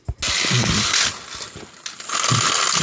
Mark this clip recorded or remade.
recorded